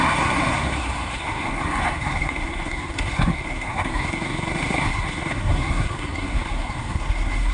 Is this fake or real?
fake